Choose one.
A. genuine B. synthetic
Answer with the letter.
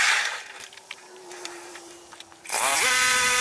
B